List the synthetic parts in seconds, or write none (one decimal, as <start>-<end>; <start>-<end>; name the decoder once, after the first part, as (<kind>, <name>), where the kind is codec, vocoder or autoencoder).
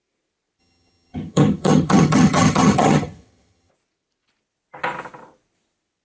0.6-3.7 (vocoder, HiFi-GAN)